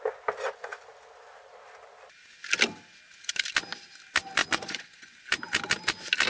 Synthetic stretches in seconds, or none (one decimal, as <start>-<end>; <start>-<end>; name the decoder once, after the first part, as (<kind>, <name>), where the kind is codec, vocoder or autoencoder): 4.4-5.1 (vocoder, Vocos)